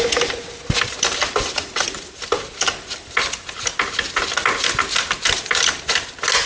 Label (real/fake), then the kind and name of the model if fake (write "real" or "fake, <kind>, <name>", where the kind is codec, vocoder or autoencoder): real